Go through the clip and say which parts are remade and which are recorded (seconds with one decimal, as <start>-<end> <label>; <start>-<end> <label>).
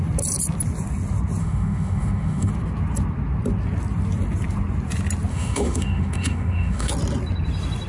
0.0-1.4 recorded; 1.4-2.5 remade; 2.5-5.3 recorded; 5.3-6.9 remade; 6.9-7.9 recorded